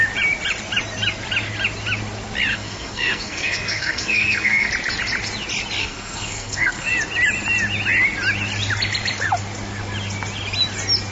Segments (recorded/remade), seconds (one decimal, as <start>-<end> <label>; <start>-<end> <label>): 0.0-2.5 recorded; 2.5-4.7 remade; 4.7-5.8 recorded; 5.8-6.9 remade; 6.9-11.1 recorded